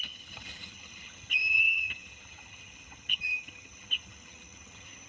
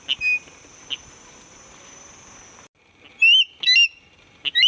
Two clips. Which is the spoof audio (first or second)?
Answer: first